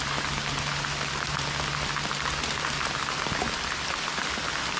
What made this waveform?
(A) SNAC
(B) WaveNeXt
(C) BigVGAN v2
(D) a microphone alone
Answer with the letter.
D